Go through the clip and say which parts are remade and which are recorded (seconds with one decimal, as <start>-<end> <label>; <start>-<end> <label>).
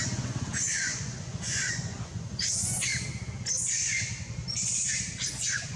0.0-2.9 remade; 2.9-3.6 recorded; 3.6-4.4 remade; 4.4-5.3 recorded; 5.3-5.8 remade